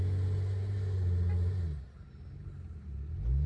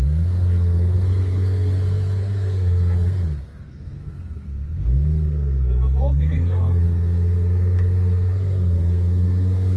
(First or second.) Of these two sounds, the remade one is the second